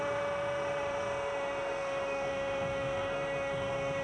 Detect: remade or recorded remade